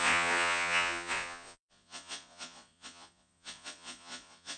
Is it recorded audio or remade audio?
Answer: remade